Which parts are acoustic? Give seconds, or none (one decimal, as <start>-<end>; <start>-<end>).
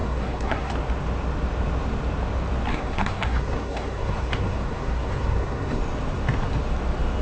0.7-2.7; 5.8-7.2